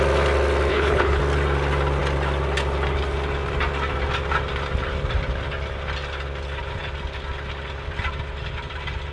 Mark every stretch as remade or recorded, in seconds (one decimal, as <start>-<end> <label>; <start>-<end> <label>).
0.0-0.7 recorded; 0.7-1.2 remade; 1.2-9.1 recorded